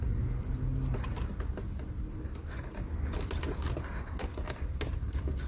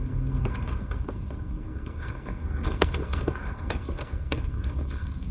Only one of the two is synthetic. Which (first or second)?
second